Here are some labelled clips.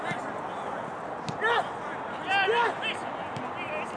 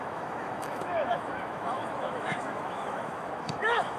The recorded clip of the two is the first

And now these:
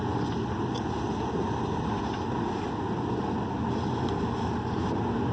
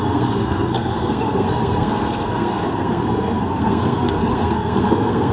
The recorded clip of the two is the first